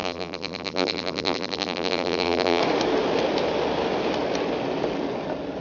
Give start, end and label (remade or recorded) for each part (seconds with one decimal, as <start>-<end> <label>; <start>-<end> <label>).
0.0-2.6 remade; 2.6-5.6 recorded